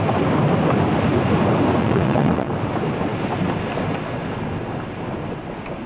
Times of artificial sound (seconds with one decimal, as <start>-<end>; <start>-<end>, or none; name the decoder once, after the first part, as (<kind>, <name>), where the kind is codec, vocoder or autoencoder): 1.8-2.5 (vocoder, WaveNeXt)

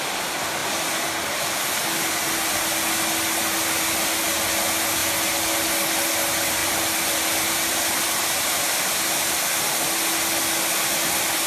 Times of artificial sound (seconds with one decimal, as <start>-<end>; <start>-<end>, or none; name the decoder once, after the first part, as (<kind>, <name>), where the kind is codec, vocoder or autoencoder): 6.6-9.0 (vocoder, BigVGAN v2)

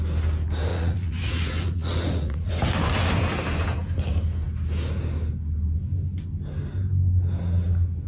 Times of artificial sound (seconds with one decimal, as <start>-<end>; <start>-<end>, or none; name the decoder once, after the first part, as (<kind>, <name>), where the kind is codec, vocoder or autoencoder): 0.7-2.5 (vocoder, Vocos)